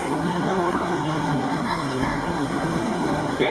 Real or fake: fake